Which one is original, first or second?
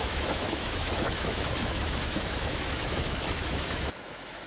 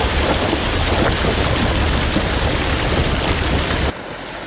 second